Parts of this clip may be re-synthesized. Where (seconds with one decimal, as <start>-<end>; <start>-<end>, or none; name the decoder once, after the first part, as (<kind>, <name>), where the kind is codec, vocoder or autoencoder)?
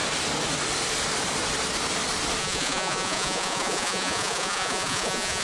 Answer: 2.4-5.4 (vocoder, Vocos)